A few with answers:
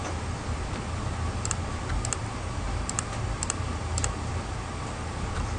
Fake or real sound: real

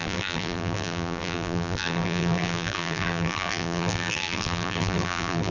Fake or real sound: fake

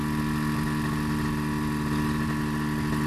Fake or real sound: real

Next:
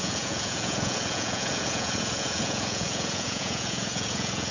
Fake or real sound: fake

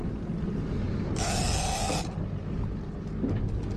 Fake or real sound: real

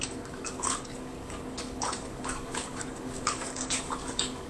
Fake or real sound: fake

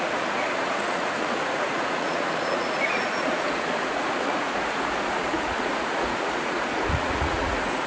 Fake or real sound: fake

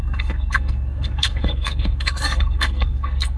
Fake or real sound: fake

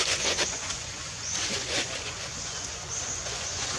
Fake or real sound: fake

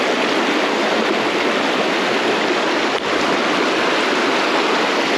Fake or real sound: real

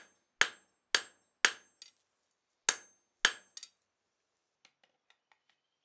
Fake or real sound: real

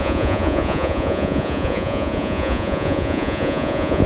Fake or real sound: fake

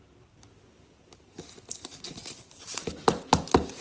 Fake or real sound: real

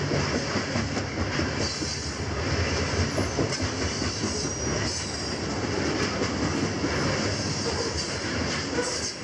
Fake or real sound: real